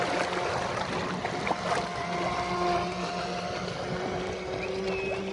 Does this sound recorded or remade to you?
recorded